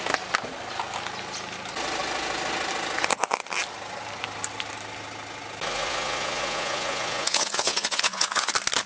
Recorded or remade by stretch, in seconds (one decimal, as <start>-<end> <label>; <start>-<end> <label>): 0.0-5.7 recorded; 5.7-8.5 remade; 8.5-8.9 recorded